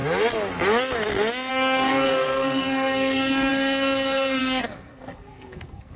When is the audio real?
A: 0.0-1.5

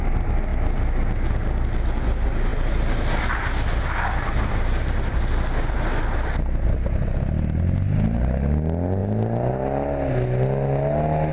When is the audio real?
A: 0.0-11.3

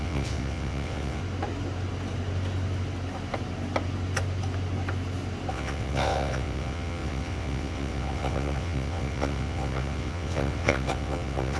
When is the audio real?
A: 1.2-5.5